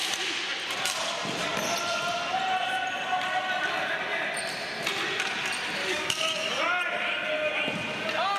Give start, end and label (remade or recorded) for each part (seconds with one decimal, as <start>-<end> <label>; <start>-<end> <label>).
0.0-5.8 recorded; 5.8-6.6 remade; 6.6-8.4 recorded

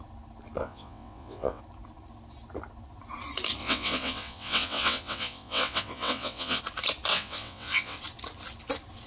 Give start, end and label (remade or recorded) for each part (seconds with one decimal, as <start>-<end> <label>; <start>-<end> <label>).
0.0-0.6 recorded; 0.6-1.6 remade; 1.6-3.6 recorded; 3.6-6.6 remade; 6.6-7.1 recorded; 7.1-8.0 remade; 8.0-9.1 recorded

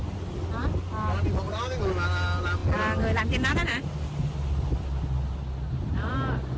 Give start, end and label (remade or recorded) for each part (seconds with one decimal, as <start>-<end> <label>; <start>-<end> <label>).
0.0-6.6 recorded